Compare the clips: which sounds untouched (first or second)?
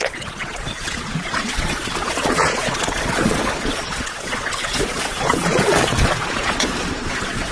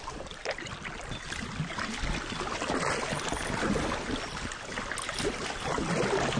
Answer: second